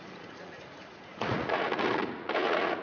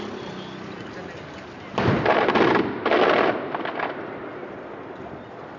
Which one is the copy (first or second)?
first